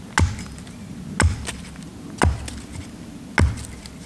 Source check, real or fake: real